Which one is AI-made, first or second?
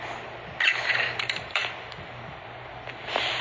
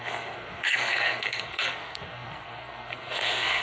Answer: second